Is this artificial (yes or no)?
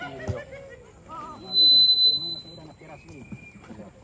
no